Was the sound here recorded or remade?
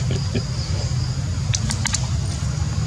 recorded